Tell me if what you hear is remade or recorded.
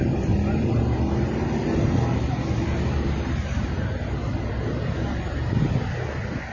recorded